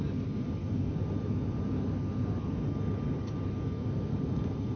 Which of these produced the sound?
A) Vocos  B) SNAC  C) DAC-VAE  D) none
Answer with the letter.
D